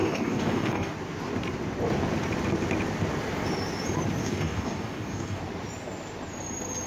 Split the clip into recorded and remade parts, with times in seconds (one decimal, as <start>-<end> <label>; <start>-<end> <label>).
0.0-0.9 remade; 0.9-4.2 recorded; 4.2-5.4 remade; 5.4-6.9 recorded